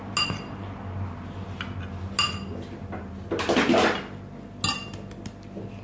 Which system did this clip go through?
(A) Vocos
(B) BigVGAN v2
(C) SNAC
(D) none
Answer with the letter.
D